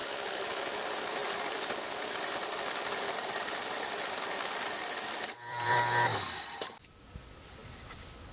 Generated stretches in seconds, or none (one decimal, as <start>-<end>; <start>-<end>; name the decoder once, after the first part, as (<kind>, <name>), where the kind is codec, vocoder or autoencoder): 0.7-7.6 (vocoder, BigVGAN v2)